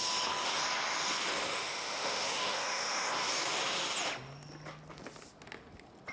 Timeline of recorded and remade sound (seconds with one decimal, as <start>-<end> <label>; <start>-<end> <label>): 0.0-1.5 recorded; 1.5-3.1 remade; 3.1-6.1 recorded